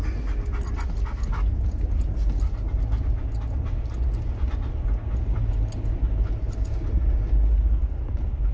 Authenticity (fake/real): real